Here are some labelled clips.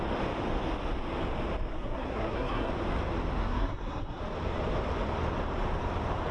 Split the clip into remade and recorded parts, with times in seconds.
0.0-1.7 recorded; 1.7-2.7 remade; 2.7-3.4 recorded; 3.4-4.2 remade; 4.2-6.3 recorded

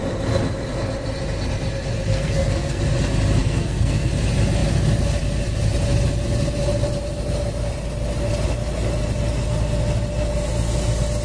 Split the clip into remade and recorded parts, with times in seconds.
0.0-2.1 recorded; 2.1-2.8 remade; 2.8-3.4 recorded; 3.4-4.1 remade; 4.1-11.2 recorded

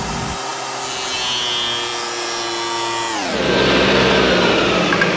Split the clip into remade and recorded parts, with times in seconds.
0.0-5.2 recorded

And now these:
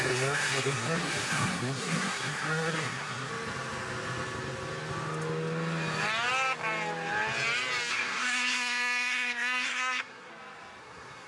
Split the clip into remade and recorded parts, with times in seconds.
0.0-3.3 remade; 3.3-7.9 recorded; 7.9-10.3 remade; 10.3-10.8 recorded; 10.8-11.3 remade